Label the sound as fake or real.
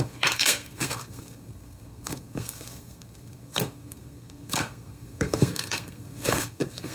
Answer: fake